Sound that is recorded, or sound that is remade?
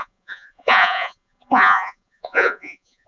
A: remade